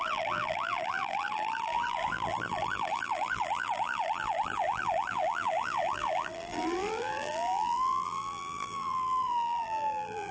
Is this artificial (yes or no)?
yes